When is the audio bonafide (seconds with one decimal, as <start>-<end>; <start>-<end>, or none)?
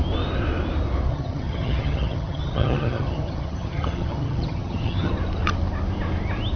0.0-1.1; 5.1-6.6